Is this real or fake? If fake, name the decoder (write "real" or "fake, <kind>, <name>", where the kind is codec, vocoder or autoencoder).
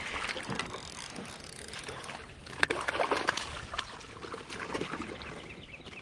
real